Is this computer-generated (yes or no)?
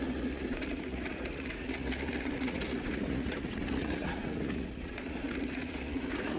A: yes